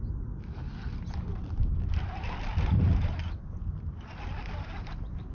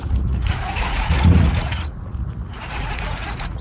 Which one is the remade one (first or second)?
second